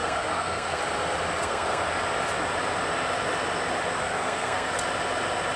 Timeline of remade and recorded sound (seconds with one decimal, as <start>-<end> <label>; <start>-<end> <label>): 0.0-0.8 remade; 0.8-1.4 recorded; 1.4-1.9 remade; 1.9-4.0 recorded; 4.0-4.7 remade; 4.7-5.6 recorded